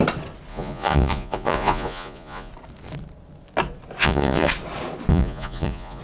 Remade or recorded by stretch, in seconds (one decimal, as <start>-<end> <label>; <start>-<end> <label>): 0.0-0.5 recorded; 0.5-2.5 remade; 2.5-4.0 recorded; 4.0-4.5 remade; 4.5-5.1 recorded; 5.1-6.0 remade